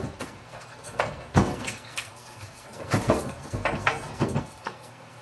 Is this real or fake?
fake